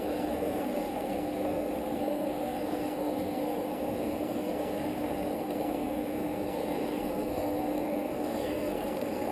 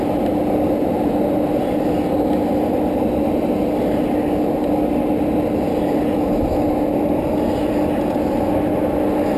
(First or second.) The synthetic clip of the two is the first